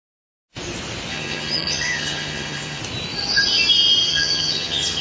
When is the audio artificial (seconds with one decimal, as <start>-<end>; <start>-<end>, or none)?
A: 1.1-2.8; 4.1-5.0